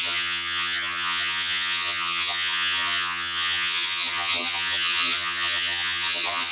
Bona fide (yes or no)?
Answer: no